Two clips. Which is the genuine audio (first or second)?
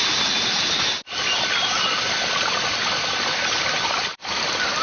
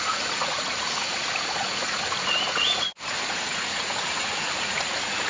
first